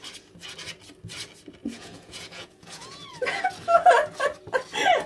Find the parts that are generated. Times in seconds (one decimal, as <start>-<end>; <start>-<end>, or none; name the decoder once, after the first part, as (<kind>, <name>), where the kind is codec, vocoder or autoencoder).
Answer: 1.6-3.4 (vocoder, Vocos)